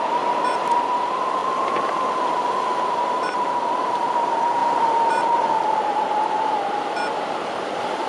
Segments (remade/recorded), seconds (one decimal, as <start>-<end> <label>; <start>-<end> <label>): 0.0-8.1 recorded